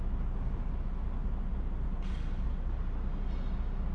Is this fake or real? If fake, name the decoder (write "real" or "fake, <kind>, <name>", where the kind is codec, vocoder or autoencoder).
real